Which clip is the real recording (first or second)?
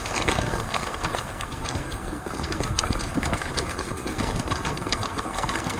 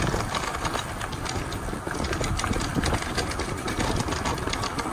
second